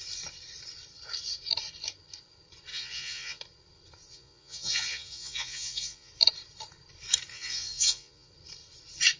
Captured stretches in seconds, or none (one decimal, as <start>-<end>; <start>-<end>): 0.0-2.7; 3.4-4.1; 6.1-7.3; 8.3-9.2